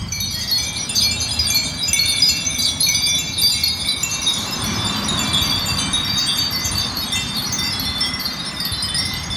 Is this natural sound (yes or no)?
yes